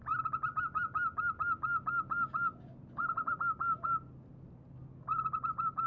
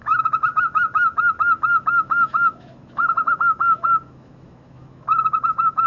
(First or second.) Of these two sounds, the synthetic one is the second